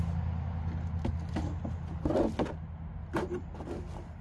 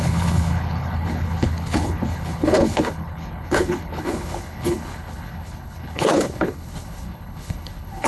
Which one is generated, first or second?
second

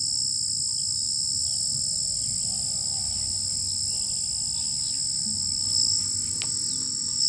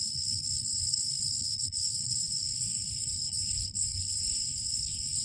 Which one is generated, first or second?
second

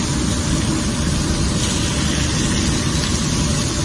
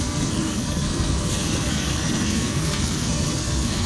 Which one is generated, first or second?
second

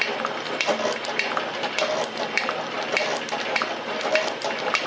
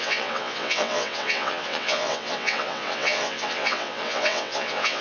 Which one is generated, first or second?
second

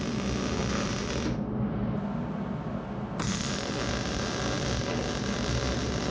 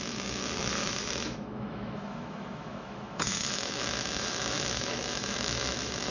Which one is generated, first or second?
second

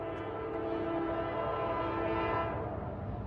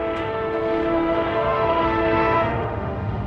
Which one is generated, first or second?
second